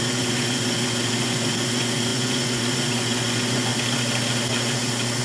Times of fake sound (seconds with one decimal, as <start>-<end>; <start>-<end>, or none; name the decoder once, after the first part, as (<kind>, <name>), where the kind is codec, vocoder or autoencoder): 0.0-3.7 (vocoder, Vocos)